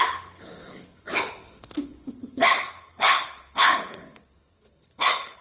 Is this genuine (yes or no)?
no